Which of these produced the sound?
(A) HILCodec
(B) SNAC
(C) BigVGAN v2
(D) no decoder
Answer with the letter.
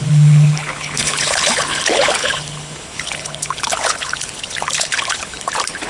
A